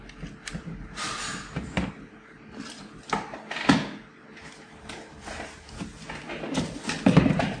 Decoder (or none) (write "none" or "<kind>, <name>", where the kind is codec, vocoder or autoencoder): none